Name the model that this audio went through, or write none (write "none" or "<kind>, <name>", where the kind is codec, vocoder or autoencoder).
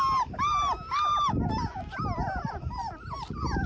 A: none